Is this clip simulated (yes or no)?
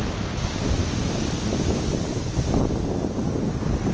no